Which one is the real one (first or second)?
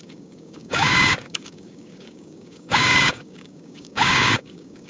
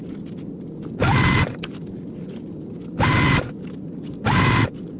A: second